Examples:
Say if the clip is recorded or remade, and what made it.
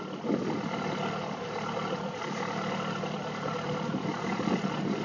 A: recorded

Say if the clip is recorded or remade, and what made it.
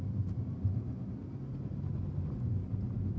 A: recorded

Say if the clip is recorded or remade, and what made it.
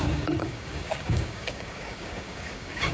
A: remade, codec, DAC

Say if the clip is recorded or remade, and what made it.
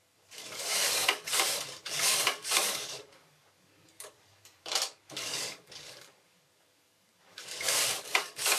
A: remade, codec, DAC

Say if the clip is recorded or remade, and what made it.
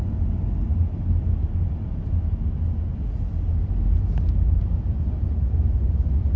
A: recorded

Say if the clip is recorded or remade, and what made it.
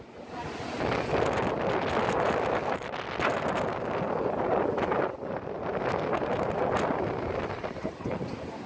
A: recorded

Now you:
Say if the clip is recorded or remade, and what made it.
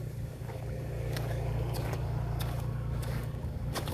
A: remade, codec, DAC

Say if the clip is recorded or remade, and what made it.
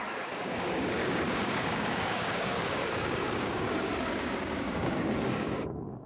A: remade, codec, DAC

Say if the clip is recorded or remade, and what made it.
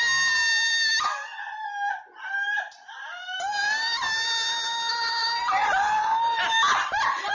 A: recorded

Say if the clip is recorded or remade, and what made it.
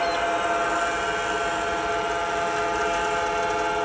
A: recorded